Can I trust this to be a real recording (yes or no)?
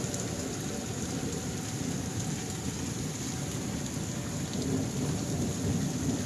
yes